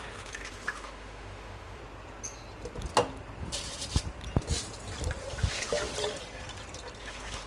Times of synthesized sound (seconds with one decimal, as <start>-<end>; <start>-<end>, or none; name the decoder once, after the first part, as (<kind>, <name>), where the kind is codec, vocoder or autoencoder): 0.0-1.8 (autoencoder, DAC-VAE); 5.3-5.9; 7.0-7.5